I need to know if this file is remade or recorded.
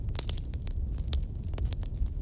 recorded